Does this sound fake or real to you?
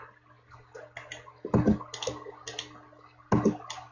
real